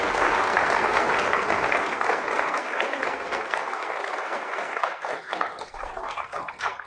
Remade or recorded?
remade